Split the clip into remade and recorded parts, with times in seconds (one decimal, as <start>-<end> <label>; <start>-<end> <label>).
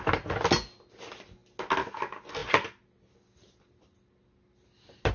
0.0-5.1 recorded